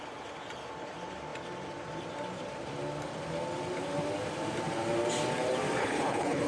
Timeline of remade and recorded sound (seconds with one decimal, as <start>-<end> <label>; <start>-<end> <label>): 0.0-5.8 recorded; 5.8-6.5 remade